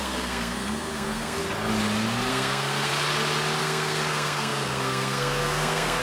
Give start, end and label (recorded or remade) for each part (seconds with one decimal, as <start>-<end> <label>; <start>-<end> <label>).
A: 0.0-1.4 remade; 1.4-2.3 recorded; 2.3-2.9 remade; 2.9-3.6 recorded; 3.6-6.0 remade